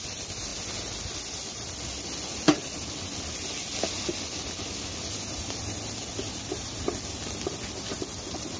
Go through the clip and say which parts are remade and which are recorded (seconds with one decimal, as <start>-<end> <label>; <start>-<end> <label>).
0.0-8.6 recorded

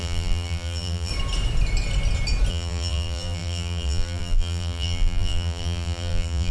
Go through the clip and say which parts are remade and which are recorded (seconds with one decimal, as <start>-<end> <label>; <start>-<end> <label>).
0.0-1.1 remade; 1.1-2.5 recorded; 2.5-6.5 remade

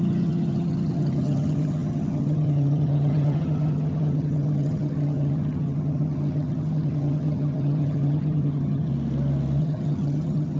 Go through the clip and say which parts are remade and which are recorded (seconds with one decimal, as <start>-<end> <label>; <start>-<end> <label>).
0.0-8.9 remade; 8.9-9.6 recorded; 9.6-10.6 remade

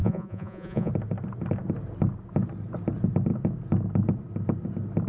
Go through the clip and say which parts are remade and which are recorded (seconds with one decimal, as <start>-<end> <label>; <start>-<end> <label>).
0.0-0.9 remade; 0.9-5.1 recorded

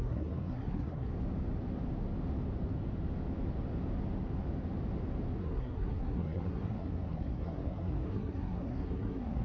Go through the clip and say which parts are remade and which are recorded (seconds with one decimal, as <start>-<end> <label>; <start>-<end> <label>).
0.0-1.1 remade; 1.1-5.4 recorded; 5.4-9.4 remade

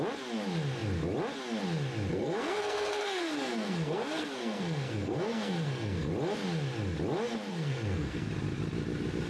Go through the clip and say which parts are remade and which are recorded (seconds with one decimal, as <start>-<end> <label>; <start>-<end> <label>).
0.0-2.1 recorded; 2.1-6.1 remade; 6.1-7.5 recorded; 7.5-8.3 remade; 8.3-9.3 recorded

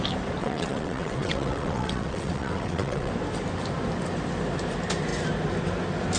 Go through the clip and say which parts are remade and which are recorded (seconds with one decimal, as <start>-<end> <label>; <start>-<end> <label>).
0.0-0.4 recorded; 0.4-3.1 remade; 3.1-6.2 recorded

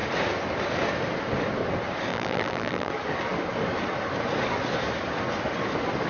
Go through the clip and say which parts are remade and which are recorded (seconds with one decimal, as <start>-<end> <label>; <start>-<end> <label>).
0.0-2.1 recorded; 2.1-2.9 remade; 2.9-6.1 recorded